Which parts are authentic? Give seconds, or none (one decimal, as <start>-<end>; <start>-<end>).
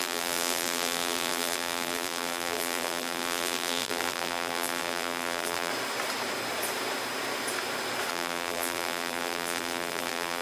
5.7-8.1